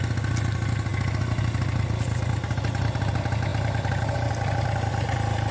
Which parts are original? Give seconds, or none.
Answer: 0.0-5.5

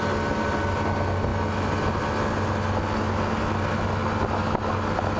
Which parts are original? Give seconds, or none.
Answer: 0.0-5.2

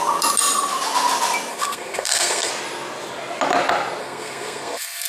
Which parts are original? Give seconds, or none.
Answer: 0.0-1.5; 2.5-4.0

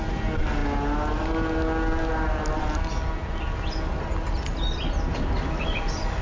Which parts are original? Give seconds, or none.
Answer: 0.0-6.2

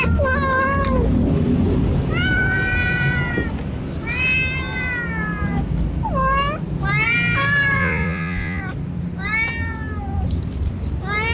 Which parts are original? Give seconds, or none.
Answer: 0.0-7.8; 8.6-11.3